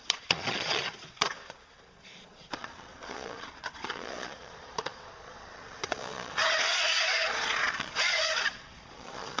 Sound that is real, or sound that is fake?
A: fake